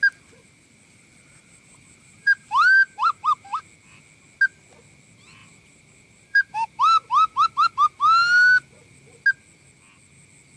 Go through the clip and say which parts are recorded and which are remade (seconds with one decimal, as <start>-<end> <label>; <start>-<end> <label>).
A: 0.0-1.4 recorded; 1.4-3.5 remade; 3.5-5.4 recorded; 5.4-6.8 remade; 6.8-10.6 recorded